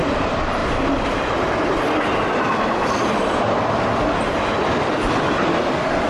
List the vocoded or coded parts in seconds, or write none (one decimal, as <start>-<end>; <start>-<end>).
0.0-6.1